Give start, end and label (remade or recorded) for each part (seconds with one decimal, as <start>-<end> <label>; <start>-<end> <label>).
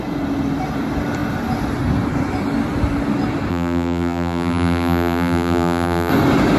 0.0-3.5 recorded; 3.5-6.1 remade; 6.1-6.6 recorded